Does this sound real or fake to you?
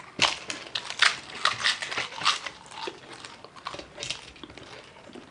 real